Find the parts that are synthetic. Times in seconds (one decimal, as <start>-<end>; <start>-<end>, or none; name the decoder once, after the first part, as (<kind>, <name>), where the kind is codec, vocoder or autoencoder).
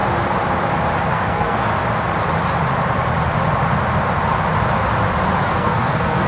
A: 1.1-1.7 (codec, SNAC); 5.5-6.3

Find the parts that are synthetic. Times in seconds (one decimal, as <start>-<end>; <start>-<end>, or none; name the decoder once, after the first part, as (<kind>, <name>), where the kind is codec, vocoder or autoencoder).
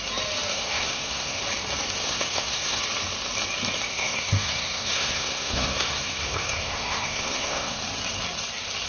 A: 0.5-1.4 (codec, SNAC); 2.0-2.8; 3.9-7.8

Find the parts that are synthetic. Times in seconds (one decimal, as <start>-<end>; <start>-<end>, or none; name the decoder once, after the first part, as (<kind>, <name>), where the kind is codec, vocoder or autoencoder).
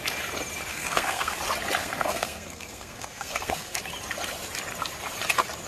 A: 0.7-1.4 (codec, SNAC); 1.8-3.8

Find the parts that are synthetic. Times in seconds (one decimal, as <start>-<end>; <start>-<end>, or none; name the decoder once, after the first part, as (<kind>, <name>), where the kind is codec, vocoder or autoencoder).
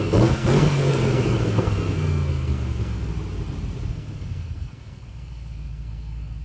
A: 0.0-3.1 (codec, SNAC); 3.9-6.4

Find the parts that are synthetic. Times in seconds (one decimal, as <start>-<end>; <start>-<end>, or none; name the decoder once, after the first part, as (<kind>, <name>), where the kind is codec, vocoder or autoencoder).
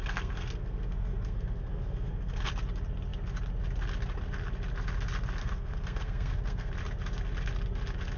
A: 0.0-2.5 (codec, SNAC); 5.4-6.7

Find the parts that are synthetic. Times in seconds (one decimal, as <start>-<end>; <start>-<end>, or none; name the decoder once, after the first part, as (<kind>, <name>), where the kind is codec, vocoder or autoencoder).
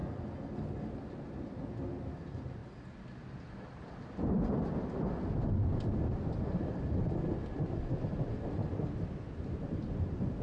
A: none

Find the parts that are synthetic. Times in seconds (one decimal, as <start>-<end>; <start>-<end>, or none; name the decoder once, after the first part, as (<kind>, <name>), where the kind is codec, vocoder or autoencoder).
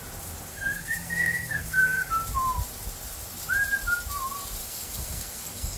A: 0.5-2.1 (codec, SNAC); 4.6-5.8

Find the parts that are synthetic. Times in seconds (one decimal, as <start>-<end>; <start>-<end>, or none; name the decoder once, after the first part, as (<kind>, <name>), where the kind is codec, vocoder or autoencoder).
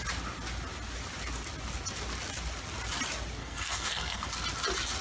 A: 3.4-4.3 (codec, SNAC)